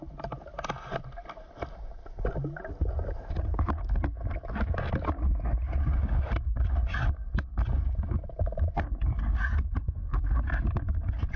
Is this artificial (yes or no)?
no